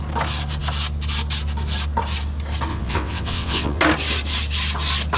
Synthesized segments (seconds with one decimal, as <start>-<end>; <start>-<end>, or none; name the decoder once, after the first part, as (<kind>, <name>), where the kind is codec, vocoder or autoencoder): 2.7-3.8 (vocoder, WaveNeXt)